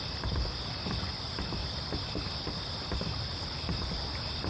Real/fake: real